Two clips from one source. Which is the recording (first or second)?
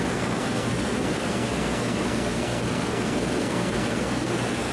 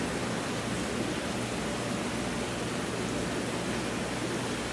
second